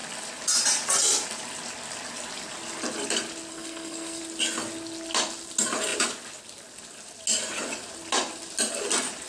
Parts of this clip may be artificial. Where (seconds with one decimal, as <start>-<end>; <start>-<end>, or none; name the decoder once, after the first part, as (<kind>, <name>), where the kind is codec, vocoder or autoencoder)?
3.5-4.2 (codec, SNAC)